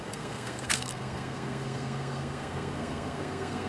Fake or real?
fake